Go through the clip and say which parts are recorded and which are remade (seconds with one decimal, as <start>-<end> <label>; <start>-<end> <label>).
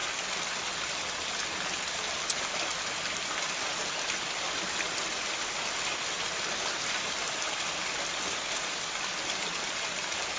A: 0.0-10.4 recorded